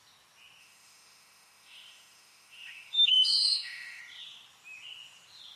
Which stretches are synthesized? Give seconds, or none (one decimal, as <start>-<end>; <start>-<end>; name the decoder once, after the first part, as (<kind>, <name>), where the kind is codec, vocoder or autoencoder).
0.6-4.0 (autoencoder, DAC-VAE)